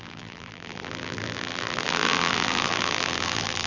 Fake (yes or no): yes